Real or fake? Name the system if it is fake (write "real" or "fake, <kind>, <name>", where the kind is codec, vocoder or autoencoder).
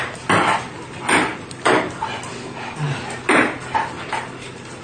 fake, vocoder, BigVGAN v2